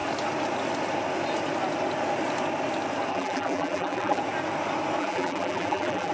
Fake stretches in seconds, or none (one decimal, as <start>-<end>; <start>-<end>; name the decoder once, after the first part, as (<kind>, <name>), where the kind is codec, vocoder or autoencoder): 3.1-4.2 (vocoder, BigVGAN v2); 5.0-6.1